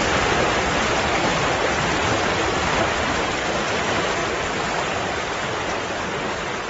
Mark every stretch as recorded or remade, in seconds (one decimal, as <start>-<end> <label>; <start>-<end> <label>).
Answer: 0.0-6.7 recorded